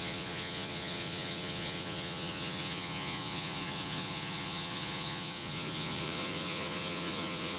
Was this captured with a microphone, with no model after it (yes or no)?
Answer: no